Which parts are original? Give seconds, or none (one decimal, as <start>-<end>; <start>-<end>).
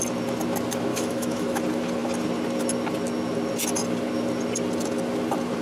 0.0-0.9; 1.6-5.6